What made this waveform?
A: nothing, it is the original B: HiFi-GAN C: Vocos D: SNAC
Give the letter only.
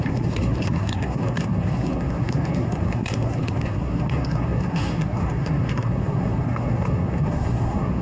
D